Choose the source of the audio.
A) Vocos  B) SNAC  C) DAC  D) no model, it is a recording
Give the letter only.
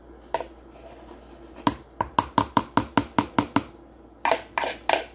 D